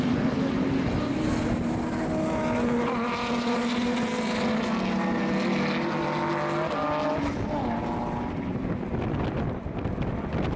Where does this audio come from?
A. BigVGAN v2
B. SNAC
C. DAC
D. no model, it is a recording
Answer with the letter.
D